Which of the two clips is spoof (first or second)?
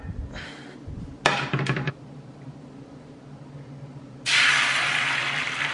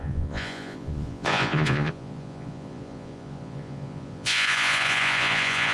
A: second